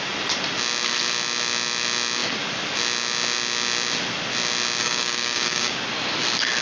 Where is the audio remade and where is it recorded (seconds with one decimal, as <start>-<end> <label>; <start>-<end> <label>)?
0.0-4.8 recorded; 4.8-5.8 remade; 5.8-6.6 recorded

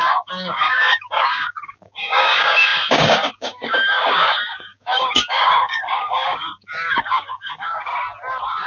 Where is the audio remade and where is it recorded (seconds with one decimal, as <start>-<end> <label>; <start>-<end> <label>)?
0.0-7.9 remade; 7.9-8.7 recorded

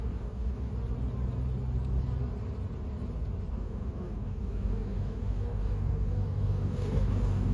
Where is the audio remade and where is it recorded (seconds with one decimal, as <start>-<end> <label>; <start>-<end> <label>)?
0.0-0.7 remade; 0.7-3.5 recorded; 3.5-7.5 remade